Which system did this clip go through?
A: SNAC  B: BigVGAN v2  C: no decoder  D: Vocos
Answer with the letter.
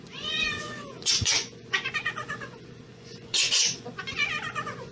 D